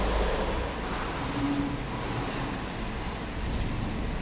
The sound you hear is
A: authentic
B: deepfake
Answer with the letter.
A